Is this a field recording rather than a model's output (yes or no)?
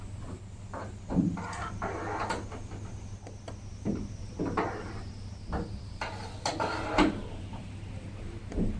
yes